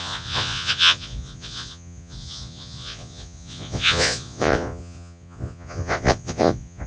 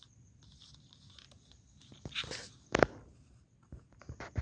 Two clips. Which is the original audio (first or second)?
second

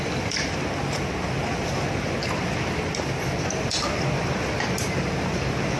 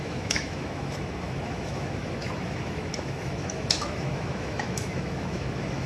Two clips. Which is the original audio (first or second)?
first